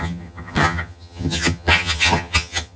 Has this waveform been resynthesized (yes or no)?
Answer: yes